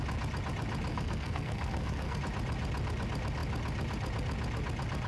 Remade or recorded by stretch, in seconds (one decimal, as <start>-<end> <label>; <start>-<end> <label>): 0.0-0.9 recorded; 0.9-2.2 remade; 2.2-5.1 recorded